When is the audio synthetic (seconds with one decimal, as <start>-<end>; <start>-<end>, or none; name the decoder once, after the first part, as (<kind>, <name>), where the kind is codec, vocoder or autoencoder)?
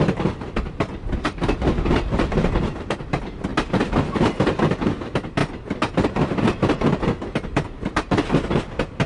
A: 0.0-3.5 (vocoder, BigVGAN v2); 4.4-5.4; 8.6-9.1